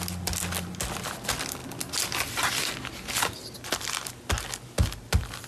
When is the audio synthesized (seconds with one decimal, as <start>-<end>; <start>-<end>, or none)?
none